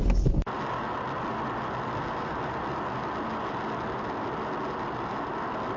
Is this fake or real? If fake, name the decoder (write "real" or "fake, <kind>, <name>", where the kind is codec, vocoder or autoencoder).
real